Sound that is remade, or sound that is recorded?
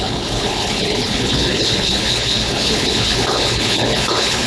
remade